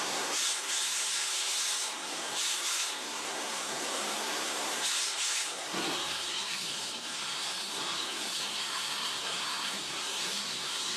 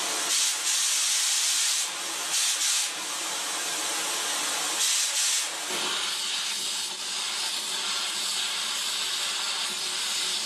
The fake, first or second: first